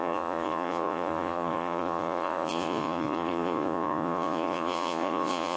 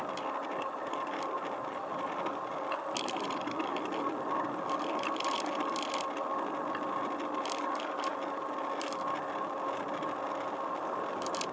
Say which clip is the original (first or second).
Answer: second